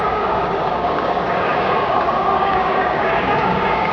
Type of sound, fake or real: fake